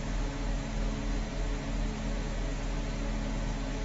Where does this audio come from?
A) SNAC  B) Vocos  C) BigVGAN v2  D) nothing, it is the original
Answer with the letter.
D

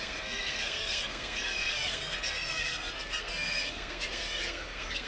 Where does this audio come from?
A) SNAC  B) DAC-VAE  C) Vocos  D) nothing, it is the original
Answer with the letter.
A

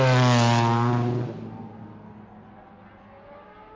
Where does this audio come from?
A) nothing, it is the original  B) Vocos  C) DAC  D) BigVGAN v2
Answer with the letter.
A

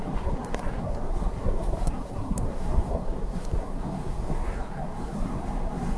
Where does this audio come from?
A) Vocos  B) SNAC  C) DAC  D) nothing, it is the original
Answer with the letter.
B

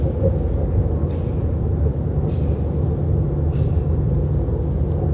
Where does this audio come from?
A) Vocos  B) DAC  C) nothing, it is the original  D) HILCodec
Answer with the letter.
C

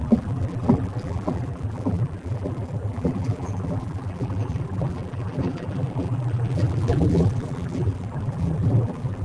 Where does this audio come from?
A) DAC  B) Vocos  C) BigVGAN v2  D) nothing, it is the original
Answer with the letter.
C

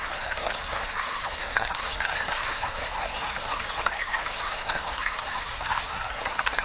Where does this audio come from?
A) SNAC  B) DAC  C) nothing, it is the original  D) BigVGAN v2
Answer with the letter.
A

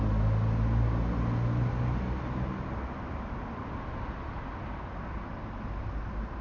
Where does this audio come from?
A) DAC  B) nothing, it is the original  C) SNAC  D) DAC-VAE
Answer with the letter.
B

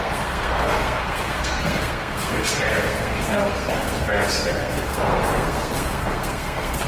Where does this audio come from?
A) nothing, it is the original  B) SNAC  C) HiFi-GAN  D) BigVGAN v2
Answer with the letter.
B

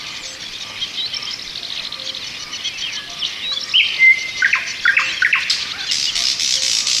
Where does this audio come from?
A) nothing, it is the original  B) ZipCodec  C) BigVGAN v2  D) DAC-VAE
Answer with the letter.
A